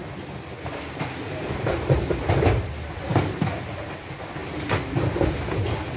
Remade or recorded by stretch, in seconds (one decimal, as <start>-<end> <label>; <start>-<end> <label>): 0.0-6.0 recorded